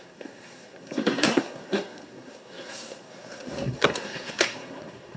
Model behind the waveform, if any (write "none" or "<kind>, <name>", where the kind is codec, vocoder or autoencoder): codec, SNAC